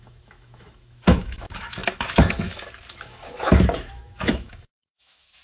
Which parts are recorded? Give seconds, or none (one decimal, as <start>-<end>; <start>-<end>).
none